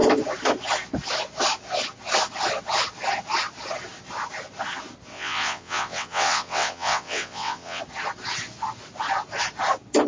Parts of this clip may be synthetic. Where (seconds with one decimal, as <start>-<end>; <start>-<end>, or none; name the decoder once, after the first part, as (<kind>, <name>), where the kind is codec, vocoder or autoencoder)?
5.1-7.8 (vocoder, WaveNeXt)